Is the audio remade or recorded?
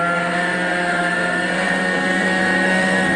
remade